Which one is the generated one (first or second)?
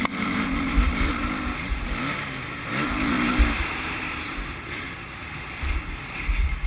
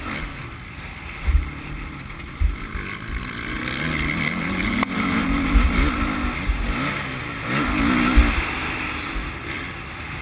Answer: first